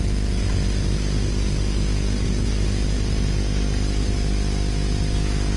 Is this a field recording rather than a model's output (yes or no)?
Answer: yes